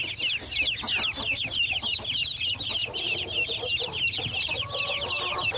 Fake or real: real